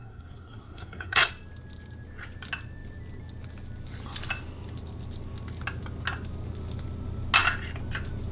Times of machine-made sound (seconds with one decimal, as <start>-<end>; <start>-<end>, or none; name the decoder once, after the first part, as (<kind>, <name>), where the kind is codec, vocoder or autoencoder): 0.0-1.3 (codec, SNAC)